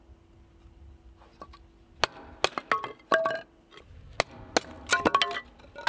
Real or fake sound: real